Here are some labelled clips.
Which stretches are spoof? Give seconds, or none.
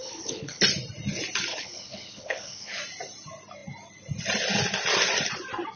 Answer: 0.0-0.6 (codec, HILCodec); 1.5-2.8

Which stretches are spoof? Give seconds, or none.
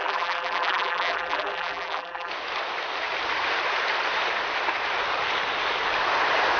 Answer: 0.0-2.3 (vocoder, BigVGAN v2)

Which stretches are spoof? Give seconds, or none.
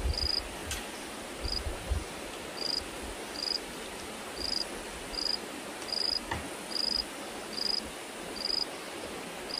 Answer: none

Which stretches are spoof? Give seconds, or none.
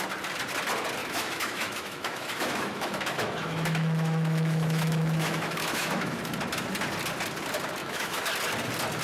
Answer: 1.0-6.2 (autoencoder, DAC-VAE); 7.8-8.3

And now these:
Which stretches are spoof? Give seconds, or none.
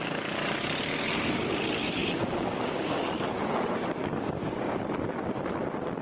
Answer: 2.0-3.1 (codec, DAC); 4.0-4.8